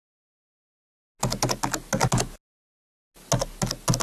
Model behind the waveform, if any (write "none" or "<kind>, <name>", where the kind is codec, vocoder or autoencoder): none